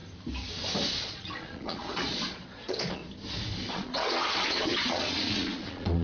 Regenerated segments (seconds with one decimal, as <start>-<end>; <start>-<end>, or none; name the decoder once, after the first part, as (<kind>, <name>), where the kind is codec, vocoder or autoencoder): 0.9-3.0 (vocoder, Vocos); 3.7-6.0

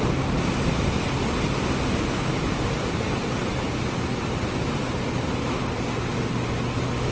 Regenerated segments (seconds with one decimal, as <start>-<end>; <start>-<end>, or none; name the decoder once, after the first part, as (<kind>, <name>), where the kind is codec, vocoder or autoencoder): none

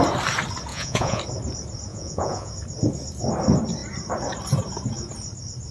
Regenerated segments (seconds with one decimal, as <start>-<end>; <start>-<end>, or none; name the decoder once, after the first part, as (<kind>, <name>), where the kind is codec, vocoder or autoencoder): 0.7-1.2 (vocoder, Vocos); 1.9-2.5

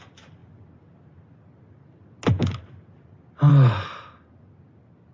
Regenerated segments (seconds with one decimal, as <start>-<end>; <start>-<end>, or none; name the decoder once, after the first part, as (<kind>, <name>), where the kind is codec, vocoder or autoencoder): none

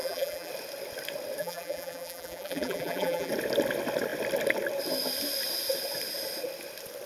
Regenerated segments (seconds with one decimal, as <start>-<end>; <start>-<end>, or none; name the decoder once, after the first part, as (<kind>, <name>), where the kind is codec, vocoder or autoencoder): 0.0-0.5 (vocoder, BigVGAN v2); 1.4-3.3

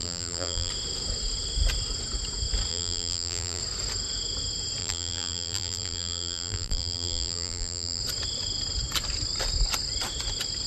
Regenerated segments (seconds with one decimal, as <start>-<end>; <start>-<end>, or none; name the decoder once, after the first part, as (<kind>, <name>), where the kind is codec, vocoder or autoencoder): 0.0-0.7 (vocoder, BigVGAN v2); 2.7-3.6; 4.8-8.0

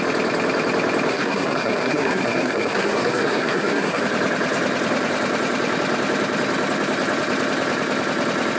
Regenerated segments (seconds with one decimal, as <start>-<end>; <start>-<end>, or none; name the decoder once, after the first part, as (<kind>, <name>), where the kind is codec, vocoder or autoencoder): 1.1-4.0 (codec, SNAC)

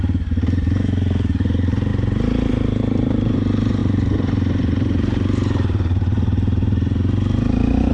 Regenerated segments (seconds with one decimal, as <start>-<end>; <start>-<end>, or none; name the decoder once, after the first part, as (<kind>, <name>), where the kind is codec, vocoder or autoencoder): 0.0-1.9 (vocoder, BigVGAN v2); 2.5-7.9